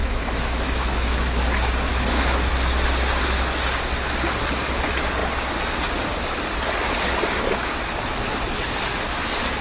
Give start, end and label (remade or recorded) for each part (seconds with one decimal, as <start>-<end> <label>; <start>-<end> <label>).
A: 0.0-1.4 remade; 1.4-1.9 recorded; 1.9-2.5 remade; 2.5-9.6 recorded